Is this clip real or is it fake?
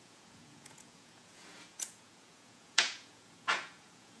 fake